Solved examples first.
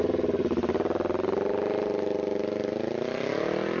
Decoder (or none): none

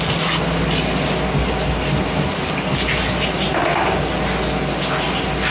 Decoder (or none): none